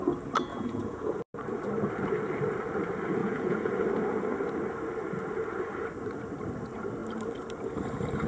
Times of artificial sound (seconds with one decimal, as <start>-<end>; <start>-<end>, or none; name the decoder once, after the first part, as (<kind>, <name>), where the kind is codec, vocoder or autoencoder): 0.5-1.2 (vocoder, Vocos); 3.2-3.7